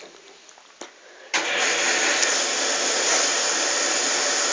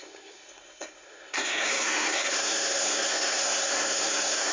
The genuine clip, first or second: first